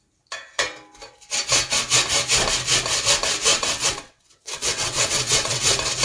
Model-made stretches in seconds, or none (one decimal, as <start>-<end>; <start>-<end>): 3.5-5.6